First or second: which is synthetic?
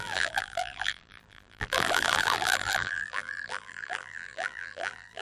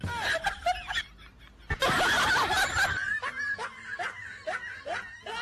first